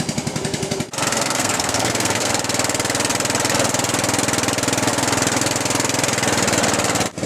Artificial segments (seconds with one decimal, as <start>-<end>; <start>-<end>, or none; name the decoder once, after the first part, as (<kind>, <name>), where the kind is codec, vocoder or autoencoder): 1.1-2.3 (codec, SNAC)